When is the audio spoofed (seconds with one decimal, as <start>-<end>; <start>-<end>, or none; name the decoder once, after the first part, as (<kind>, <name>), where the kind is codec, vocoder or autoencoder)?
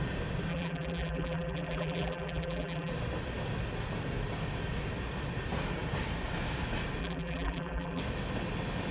0.5-2.9 (vocoder, BigVGAN v2); 7.0-8.0